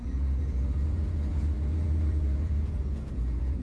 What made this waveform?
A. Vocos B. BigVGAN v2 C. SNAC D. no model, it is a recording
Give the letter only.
A